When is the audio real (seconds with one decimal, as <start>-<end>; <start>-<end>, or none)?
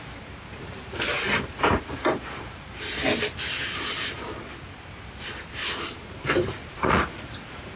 0.0-6.6